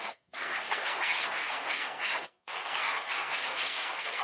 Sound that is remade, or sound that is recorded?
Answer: remade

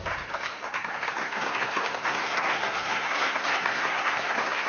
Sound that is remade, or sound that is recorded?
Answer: remade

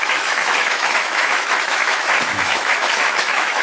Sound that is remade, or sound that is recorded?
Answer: remade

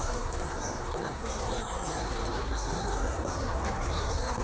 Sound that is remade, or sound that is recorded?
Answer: remade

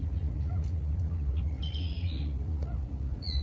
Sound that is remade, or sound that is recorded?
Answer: remade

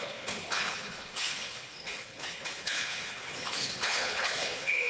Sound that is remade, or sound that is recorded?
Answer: remade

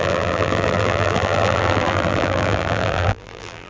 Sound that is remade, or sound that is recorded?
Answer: remade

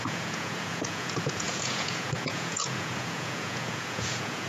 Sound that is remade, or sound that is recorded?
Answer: remade